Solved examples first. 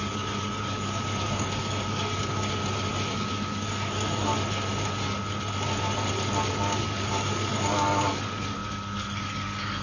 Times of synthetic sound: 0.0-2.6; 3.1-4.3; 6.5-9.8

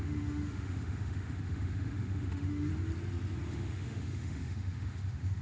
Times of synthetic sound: 0.0-2.7; 3.5-5.4

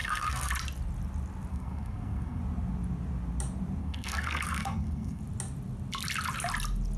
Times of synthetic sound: 0.0-0.5; 1.5-2.4; 3.8-5.2

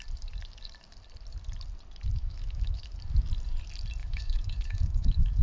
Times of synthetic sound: 2.1-2.9; 4.0-5.4

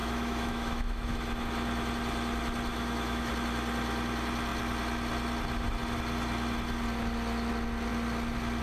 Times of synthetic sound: 0.0-1.1; 2.7-3.3

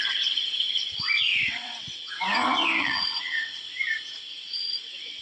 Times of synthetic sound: 1.3-2.1; 2.8-3.6; 4.3-5.2